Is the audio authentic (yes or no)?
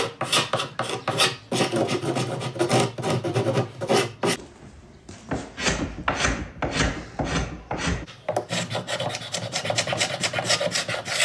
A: yes